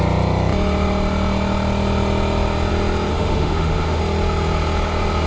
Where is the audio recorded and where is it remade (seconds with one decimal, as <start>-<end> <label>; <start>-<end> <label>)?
0.0-3.1 recorded; 3.1-4.0 remade; 4.0-5.3 recorded